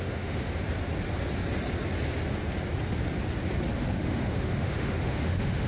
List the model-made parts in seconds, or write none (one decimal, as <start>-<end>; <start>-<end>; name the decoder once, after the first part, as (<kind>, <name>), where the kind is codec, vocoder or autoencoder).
0.0-0.5 (autoencoder, DAC-VAE); 3.9-5.7